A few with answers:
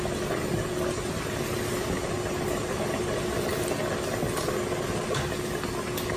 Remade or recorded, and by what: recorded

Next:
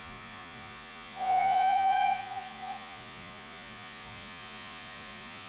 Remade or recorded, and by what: remade, vocoder, Vocos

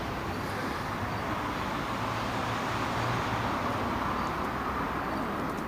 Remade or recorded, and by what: recorded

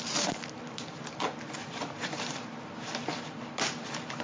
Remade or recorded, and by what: recorded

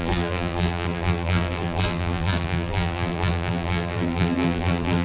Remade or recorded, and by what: remade, vocoder, BigVGAN v2